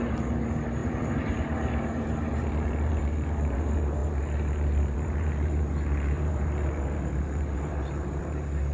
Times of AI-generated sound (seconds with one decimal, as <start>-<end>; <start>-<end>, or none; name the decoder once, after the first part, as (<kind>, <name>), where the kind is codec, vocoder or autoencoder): 0.0-8.7 (vocoder, BigVGAN v2)